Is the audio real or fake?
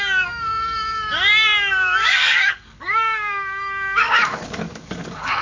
fake